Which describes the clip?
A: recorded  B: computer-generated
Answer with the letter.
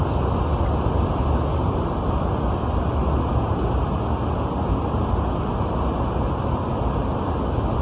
A